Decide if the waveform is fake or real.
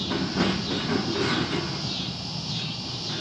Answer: real